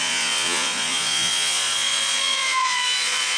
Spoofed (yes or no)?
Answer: yes